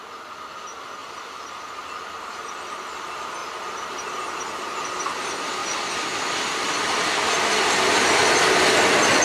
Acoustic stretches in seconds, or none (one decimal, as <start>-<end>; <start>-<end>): 0.0-1.0; 1.7-9.2